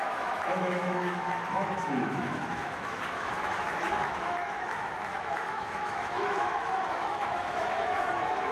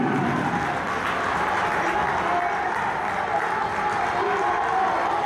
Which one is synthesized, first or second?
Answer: first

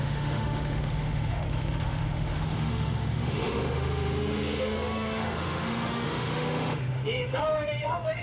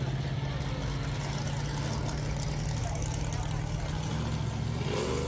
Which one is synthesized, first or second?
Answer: first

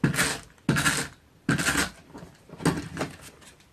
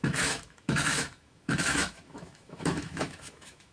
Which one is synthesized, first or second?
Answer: second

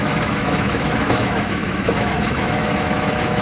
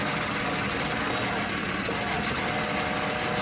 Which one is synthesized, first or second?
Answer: first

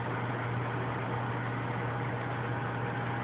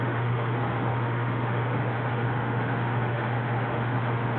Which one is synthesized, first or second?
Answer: second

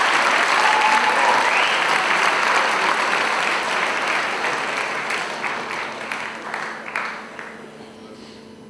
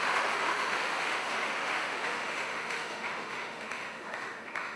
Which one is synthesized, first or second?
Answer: second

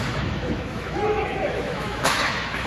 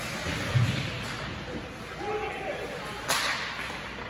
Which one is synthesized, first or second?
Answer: first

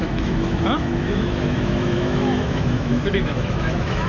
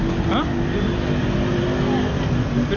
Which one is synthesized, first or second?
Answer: first